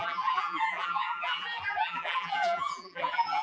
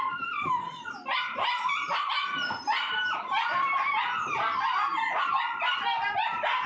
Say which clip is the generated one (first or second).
first